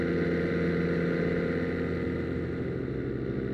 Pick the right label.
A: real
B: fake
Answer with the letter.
A